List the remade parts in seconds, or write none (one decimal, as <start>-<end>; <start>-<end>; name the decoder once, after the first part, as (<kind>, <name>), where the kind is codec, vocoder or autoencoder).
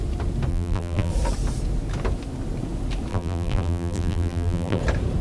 0.5-1.1 (vocoder, BigVGAN v2); 3.1-4.8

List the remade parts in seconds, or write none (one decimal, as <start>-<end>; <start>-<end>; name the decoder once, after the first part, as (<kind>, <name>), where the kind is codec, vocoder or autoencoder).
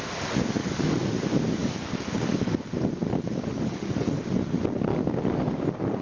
0.6-1.1 (codec, DAC); 1.6-2.5; 3.0-4.2; 4.9-6.0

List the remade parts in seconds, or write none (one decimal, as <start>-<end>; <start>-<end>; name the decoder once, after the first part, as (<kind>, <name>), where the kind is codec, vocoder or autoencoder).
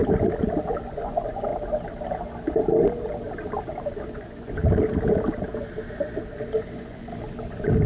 0.9-1.5 (vocoder, Vocos); 4.1-4.6; 6.5-7.1